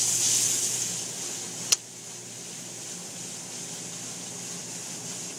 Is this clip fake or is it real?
real